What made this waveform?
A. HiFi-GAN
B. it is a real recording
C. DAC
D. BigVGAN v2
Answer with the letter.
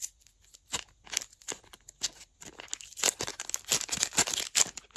B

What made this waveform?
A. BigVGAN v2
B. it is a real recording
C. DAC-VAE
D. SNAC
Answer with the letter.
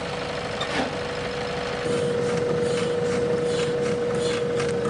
B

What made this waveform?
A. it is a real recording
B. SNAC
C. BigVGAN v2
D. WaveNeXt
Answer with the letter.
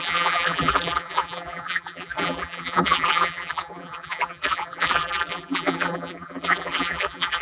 C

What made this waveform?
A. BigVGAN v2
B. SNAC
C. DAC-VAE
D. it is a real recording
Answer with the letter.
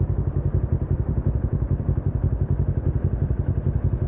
A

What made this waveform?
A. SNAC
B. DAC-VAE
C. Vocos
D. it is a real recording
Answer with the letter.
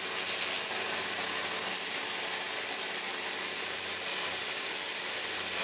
D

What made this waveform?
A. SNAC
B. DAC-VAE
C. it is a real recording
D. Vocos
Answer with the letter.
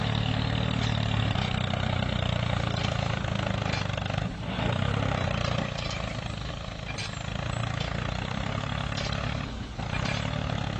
C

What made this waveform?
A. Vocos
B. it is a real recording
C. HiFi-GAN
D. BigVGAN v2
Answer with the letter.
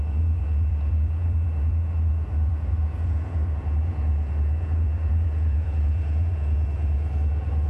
A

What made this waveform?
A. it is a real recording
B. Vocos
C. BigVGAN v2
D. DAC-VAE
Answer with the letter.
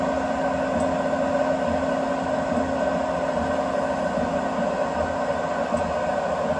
A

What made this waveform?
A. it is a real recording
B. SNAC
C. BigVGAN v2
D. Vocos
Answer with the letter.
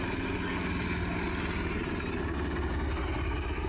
A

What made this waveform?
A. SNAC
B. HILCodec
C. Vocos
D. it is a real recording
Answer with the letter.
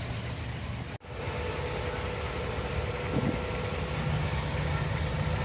D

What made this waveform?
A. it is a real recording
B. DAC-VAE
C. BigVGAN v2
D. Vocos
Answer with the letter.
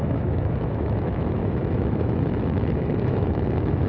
B